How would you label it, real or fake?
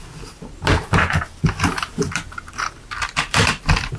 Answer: real